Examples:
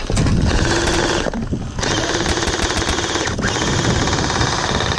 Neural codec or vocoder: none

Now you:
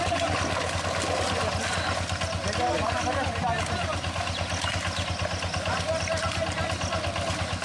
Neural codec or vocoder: none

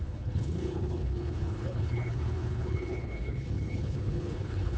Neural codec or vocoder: codec, HILCodec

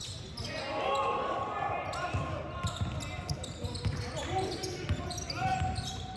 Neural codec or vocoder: none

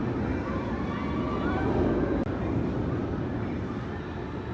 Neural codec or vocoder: none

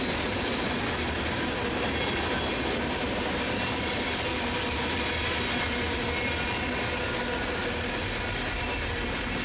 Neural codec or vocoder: none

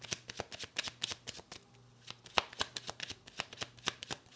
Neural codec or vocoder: none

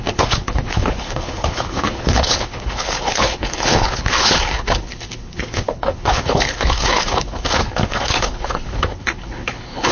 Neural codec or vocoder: codec, HILCodec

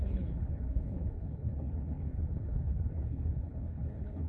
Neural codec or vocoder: codec, HILCodec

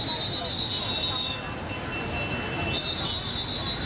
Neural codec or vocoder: none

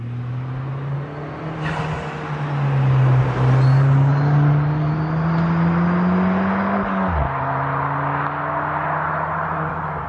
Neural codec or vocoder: none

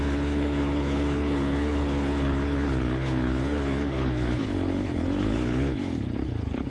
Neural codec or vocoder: codec, HILCodec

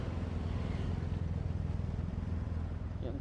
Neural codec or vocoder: none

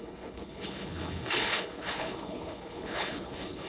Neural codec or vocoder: codec, HILCodec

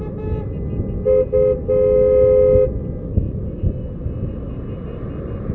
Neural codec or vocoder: none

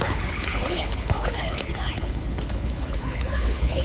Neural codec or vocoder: codec, HILCodec